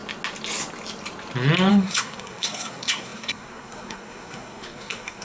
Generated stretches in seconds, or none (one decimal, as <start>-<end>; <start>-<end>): 1.7-5.2